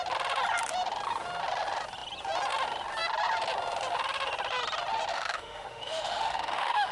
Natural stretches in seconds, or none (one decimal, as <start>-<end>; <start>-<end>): 0.0-5.1